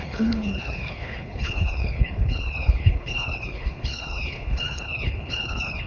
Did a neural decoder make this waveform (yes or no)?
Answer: yes